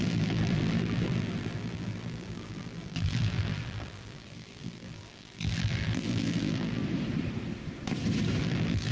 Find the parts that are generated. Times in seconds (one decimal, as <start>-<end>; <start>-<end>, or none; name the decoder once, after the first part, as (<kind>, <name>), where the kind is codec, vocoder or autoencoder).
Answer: 0.0-6.8 (vocoder, BigVGAN v2); 8.4-8.9